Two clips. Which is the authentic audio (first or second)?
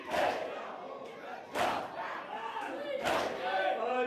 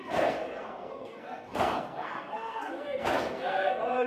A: first